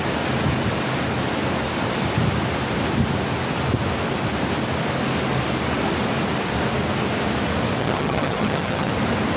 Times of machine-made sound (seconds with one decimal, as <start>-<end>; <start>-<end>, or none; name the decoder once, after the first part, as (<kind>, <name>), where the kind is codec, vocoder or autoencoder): 7.8-8.9 (vocoder, HiFi-GAN)